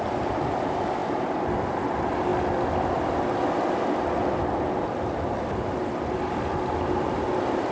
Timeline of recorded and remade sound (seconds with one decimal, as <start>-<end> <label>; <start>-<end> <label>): 0.0-7.7 recorded